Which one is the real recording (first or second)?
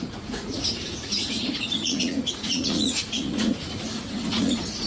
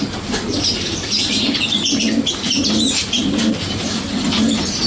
second